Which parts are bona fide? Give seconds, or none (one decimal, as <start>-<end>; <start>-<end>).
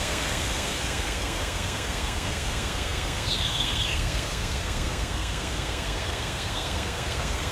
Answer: none